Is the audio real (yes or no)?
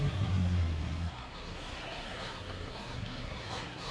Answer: no